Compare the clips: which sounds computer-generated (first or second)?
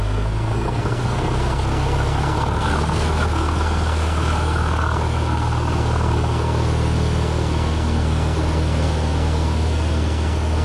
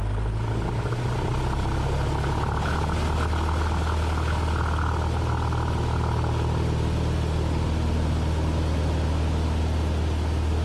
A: first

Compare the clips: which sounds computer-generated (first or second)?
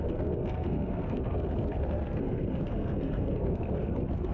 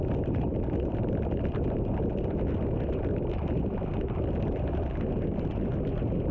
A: first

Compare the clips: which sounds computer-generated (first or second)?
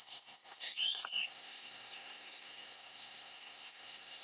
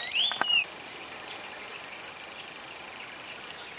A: first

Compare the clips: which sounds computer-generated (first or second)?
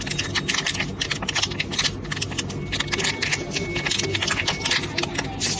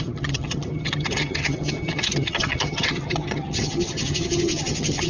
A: second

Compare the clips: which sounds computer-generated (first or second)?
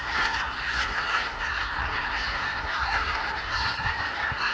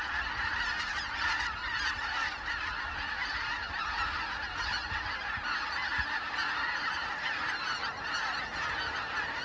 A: first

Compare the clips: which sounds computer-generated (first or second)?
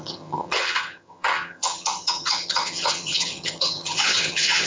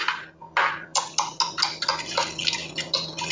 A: first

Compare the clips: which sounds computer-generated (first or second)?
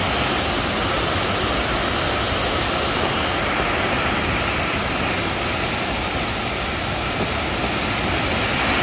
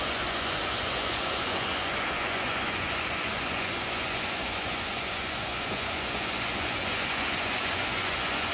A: second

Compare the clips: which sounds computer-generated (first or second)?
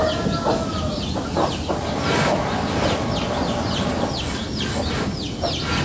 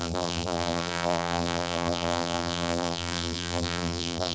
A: second